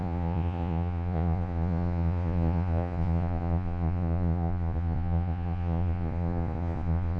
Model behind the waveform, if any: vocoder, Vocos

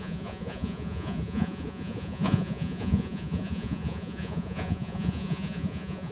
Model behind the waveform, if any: vocoder, Vocos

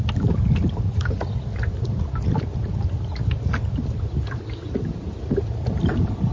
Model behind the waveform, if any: none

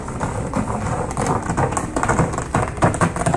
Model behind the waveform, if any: none